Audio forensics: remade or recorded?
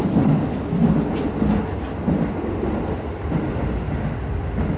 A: recorded